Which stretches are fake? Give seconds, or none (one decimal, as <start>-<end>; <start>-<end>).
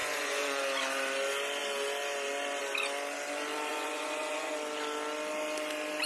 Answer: 0.0-0.6; 3.7-4.5